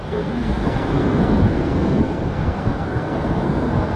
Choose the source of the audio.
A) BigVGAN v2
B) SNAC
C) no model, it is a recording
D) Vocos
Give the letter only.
B